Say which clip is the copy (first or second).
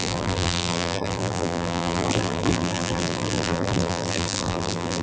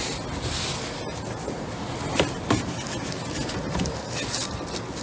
first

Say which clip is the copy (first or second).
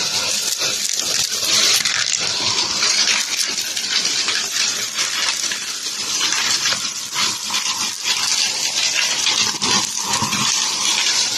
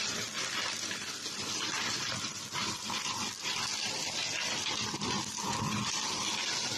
first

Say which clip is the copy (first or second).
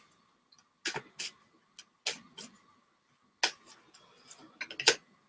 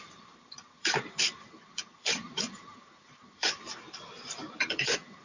second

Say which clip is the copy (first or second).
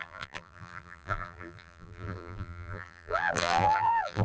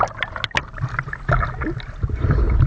first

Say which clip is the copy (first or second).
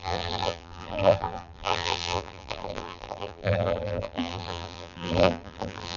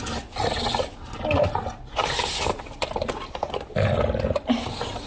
first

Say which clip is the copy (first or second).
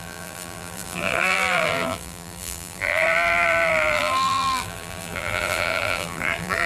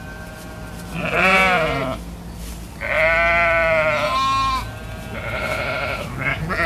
first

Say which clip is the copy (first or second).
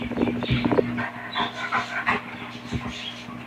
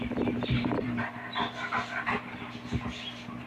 second